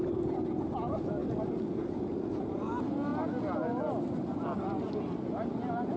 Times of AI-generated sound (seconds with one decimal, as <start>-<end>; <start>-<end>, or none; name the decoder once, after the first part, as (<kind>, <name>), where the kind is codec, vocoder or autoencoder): none